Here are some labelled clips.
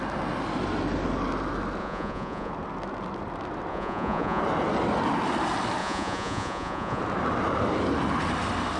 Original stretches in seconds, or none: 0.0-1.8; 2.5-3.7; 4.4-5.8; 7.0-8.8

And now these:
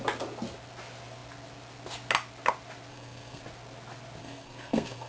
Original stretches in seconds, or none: 0.0-2.9; 3.4-4.2

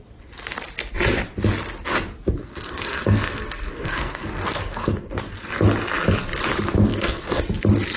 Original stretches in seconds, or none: 0.0-2.4; 5.2-6.9; 7.4-8.0

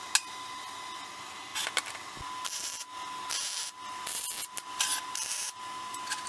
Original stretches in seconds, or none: 0.0-6.3

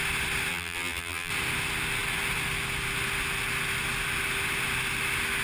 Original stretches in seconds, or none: 0.0-0.5; 1.3-5.4

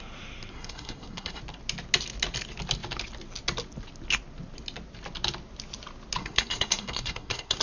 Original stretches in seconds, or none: 0.0-0.5; 1.4-6.2

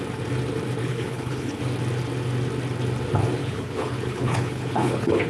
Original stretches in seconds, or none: 0.0-0.8; 1.6-3.4

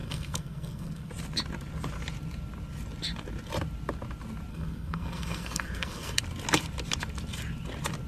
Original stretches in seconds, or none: 1.1-4.5; 6.2-8.1